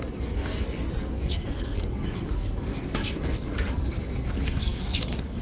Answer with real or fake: fake